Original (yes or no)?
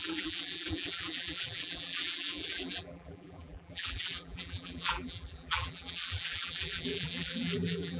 no